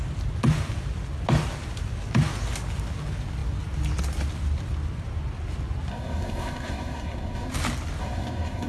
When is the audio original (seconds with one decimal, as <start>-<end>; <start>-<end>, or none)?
0.0-5.9; 7.5-8.0